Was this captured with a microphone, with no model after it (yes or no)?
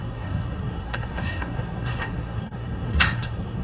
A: no